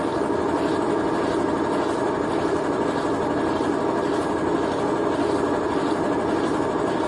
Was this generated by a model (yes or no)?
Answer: no